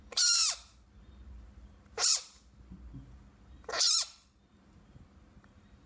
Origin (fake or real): fake